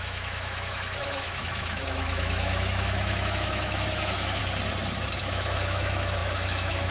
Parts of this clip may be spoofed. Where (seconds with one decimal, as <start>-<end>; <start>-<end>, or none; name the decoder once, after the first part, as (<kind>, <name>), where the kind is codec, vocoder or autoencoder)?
0.0-4.4 (autoencoder, DAC-VAE); 5.2-6.9